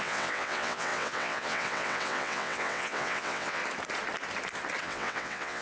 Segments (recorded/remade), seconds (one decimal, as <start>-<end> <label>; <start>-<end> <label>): 0.0-3.6 remade; 3.6-4.8 recorded; 4.8-5.6 remade